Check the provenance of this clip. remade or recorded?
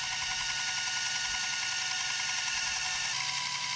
recorded